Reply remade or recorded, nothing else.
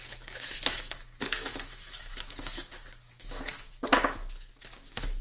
remade